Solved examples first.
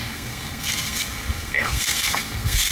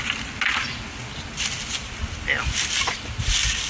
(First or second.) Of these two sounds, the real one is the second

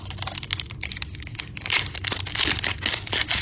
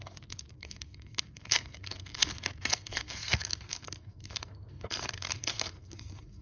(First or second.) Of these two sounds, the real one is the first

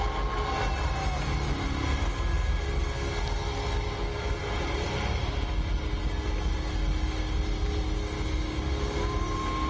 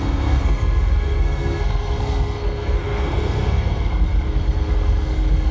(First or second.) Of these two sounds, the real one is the first